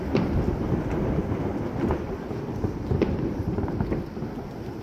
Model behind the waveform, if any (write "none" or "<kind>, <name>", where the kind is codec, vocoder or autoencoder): none